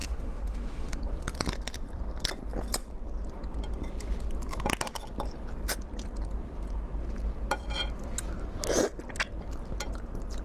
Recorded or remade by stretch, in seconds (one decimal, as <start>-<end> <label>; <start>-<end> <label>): 0.0-1.0 remade; 1.0-10.4 recorded